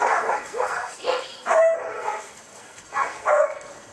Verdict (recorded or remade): remade